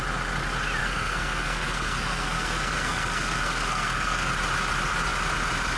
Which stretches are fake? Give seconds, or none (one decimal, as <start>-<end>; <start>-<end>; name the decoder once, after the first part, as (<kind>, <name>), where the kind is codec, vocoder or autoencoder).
0.8-4.3 (codec, SNAC)